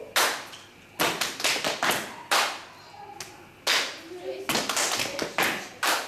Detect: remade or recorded recorded